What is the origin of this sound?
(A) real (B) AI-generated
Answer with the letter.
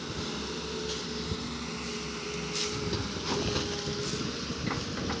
A